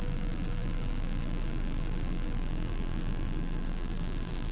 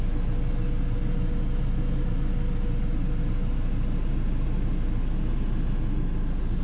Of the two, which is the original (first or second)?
second